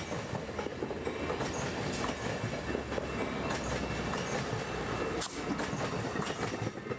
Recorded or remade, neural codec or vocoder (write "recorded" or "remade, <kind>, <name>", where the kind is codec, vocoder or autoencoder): recorded